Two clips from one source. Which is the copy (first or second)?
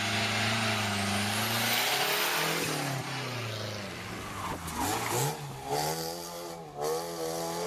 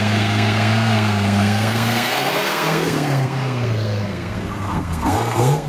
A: second